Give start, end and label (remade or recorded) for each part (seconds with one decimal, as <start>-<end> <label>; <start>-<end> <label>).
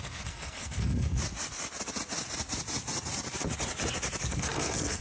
0.0-1.2 remade; 1.2-4.2 recorded; 4.2-5.0 remade